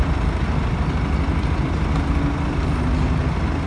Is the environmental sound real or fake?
real